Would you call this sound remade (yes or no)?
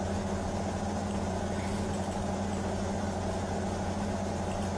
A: no